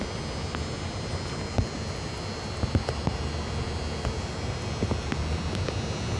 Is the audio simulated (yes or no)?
no